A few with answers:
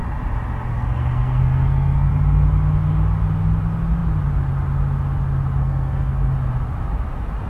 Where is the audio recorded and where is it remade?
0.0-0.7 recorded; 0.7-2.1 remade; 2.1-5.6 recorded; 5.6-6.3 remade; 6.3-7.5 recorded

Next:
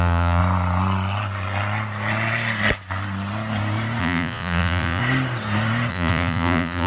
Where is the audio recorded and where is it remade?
0.0-0.4 remade; 0.4-4.0 recorded; 4.0-5.0 remade; 5.0-5.9 recorded; 5.9-6.9 remade

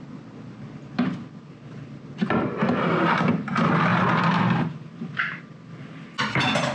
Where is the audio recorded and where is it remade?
0.0-3.9 recorded; 3.9-5.4 remade; 5.4-6.7 recorded

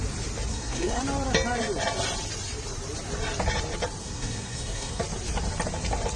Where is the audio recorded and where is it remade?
0.0-0.5 recorded; 0.5-1.0 remade; 1.0-4.0 recorded; 4.0-5.0 remade; 5.0-6.2 recorded

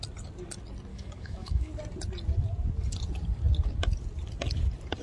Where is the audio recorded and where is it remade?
0.0-0.9 recorded; 0.9-1.7 remade; 1.7-5.0 recorded

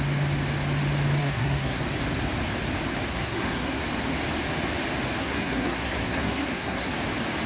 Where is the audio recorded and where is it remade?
0.0-1.2 recorded; 1.2-1.8 remade; 1.8-3.1 recorded; 3.1-3.8 remade; 3.8-5.2 recorded; 5.2-6.9 remade; 6.9-7.5 recorded